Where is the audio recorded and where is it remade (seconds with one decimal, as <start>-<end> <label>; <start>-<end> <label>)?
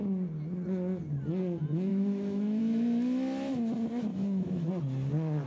0.0-1.9 recorded; 1.9-2.6 remade; 2.6-4.1 recorded; 4.1-4.7 remade; 4.7-5.5 recorded